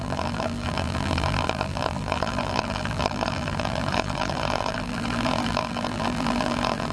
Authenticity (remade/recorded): remade